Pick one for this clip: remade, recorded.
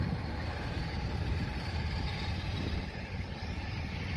remade